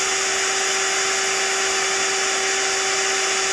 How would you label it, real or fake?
real